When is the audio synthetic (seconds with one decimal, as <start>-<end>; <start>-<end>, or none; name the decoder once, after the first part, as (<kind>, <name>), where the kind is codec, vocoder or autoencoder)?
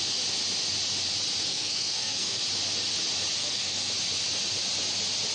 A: 1.5-2.4 (codec, SNAC); 3.4-3.9